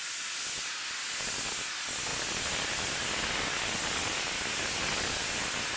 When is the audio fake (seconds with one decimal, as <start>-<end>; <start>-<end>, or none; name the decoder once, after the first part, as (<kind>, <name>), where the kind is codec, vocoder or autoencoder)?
none